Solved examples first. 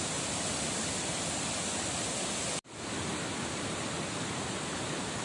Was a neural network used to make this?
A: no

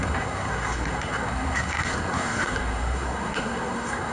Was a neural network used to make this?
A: yes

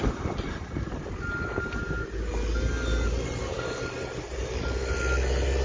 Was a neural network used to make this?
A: no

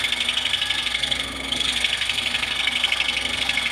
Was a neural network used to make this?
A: yes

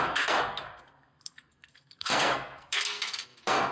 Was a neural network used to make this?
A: yes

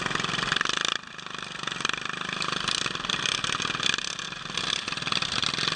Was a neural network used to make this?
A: no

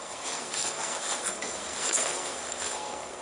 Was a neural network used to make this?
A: yes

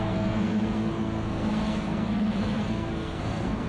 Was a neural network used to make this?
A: yes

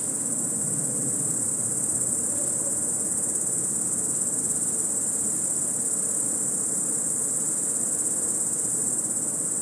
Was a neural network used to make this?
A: no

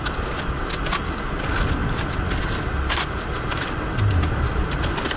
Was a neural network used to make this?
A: no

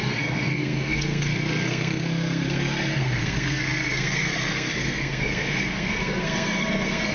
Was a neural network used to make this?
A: yes